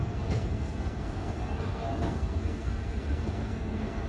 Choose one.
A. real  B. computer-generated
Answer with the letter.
B